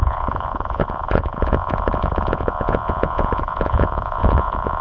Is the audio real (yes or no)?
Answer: no